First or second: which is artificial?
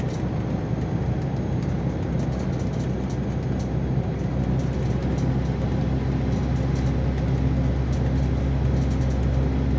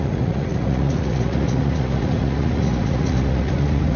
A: second